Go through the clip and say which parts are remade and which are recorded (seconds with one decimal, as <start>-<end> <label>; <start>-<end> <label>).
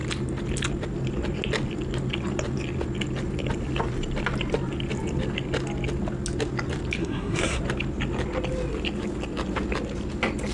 0.0-7.0 recorded; 7.0-7.6 remade; 7.6-10.5 recorded